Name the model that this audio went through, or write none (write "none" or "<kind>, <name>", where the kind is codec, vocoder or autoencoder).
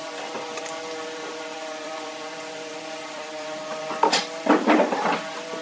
vocoder, BigVGAN v2